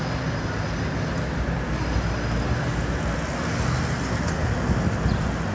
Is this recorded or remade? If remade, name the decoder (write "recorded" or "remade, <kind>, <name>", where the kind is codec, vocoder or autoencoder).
recorded